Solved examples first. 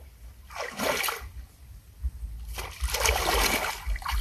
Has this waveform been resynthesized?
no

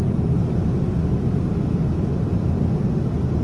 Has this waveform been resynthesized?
no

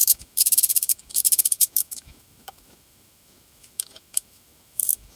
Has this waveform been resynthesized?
yes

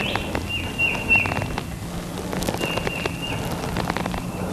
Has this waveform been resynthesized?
no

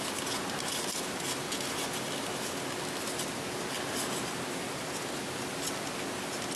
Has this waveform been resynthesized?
no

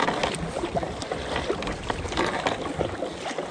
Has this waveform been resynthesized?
no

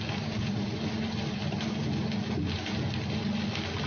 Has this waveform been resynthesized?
no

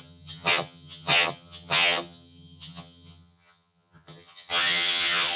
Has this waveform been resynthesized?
yes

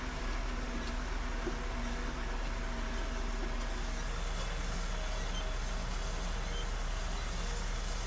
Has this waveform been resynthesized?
no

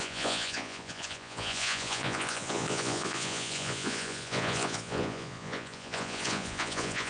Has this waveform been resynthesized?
yes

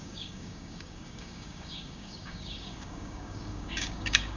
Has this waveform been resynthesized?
yes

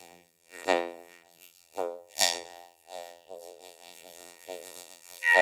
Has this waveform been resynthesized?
yes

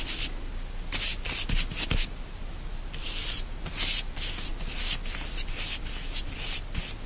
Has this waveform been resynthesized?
no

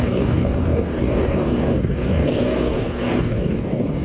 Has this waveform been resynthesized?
yes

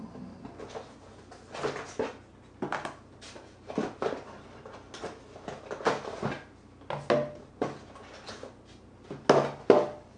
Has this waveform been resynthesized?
no